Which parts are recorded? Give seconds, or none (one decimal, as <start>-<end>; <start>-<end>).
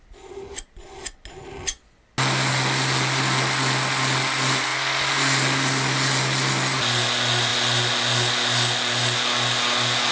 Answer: 0.0-10.1